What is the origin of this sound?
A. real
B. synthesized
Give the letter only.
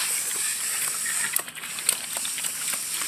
A